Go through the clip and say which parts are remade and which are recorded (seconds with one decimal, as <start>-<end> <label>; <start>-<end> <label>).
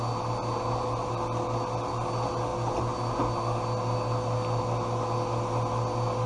0.0-6.3 recorded